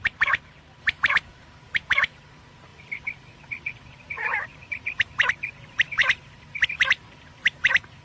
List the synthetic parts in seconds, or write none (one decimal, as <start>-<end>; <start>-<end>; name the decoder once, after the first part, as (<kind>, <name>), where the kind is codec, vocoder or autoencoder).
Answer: 0.0-6.0 (vocoder, BigVGAN v2); 6.7-8.0